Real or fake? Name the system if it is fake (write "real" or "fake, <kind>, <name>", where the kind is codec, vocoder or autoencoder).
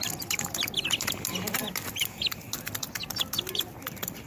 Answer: real